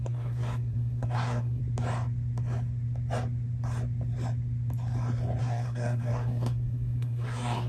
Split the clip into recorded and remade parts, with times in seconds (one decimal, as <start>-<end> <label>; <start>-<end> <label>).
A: 0.0-1.6 remade; 1.6-5.4 recorded; 5.4-7.7 remade